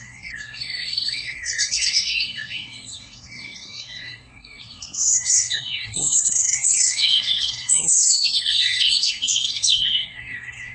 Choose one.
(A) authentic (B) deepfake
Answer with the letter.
B